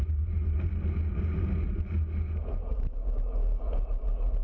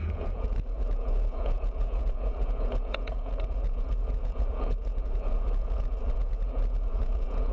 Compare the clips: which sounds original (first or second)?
first